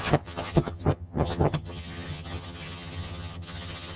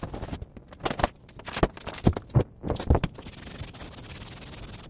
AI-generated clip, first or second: first